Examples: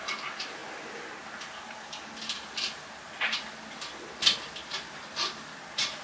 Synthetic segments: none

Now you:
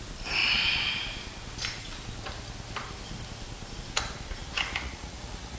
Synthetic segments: 4.4-5.6 (vocoder, Vocos)

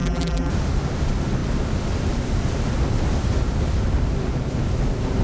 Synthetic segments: 0.0-0.5 (vocoder, BigVGAN v2)

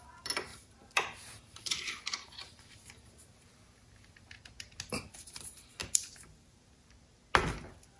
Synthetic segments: 0.5-4.3 (vocoder, BigVGAN v2); 5.8-6.9

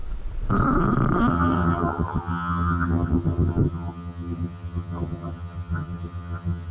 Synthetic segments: 1.3-6.7 (vocoder, HiFi-GAN)

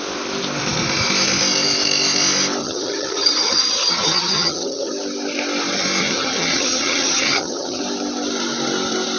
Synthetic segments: 2.6-4.9 (vocoder, HiFi-GAN); 6.0-7.8

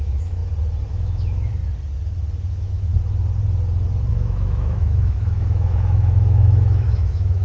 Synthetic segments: 0.0-0.4 (autoencoder, DAC-VAE); 0.9-1.6; 2.5-2.9; 4.1-7.4